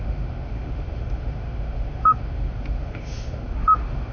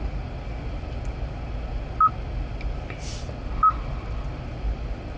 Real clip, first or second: second